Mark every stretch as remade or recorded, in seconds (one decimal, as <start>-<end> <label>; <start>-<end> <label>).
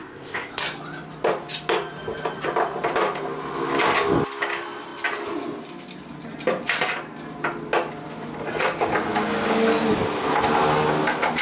0.0-0.6 remade; 0.6-11.4 recorded